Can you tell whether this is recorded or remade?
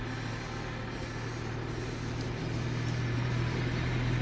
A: recorded